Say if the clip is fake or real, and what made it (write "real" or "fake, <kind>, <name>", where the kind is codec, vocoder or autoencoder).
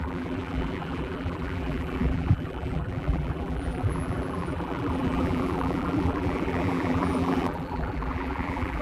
fake, vocoder, BigVGAN v2